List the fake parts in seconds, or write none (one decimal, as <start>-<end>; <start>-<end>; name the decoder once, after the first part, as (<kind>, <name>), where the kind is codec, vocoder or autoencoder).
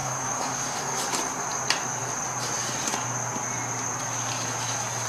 0.0-1.0 (codec, DAC)